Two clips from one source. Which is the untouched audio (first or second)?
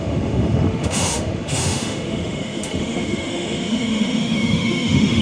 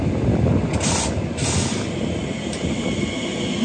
second